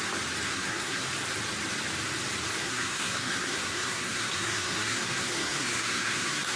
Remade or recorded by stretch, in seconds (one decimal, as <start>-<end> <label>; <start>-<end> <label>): 0.0-0.5 recorded; 0.5-1.1 remade; 1.1-2.6 recorded; 2.6-6.6 remade